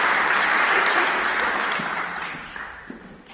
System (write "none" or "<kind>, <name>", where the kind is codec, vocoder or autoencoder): none